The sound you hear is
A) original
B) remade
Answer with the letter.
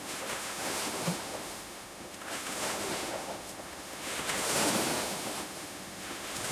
B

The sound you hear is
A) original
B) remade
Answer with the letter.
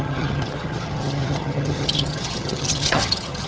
B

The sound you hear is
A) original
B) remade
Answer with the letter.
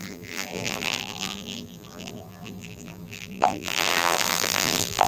B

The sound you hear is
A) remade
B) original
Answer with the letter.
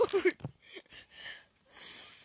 B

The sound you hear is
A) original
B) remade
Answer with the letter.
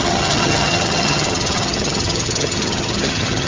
B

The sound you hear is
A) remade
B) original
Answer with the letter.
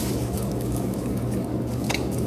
A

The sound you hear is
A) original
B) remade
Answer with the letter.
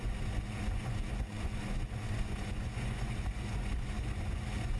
B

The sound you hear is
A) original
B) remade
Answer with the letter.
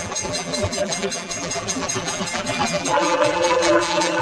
B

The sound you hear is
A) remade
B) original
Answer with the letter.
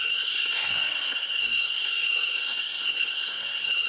A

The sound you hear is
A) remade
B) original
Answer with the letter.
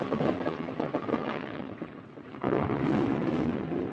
A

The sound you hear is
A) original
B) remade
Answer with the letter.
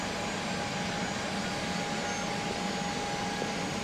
A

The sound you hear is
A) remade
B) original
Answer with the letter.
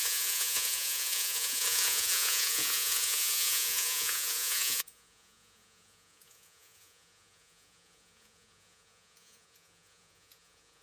A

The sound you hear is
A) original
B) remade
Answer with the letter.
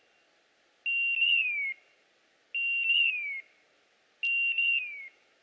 A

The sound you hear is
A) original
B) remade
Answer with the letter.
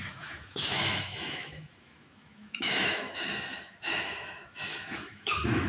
B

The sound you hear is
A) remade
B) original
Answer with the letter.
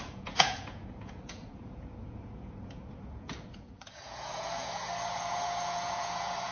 A